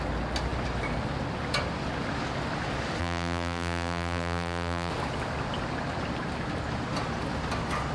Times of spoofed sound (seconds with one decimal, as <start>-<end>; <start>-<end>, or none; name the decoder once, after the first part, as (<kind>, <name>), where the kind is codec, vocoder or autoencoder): 3.0-4.9 (vocoder, BigVGAN v2)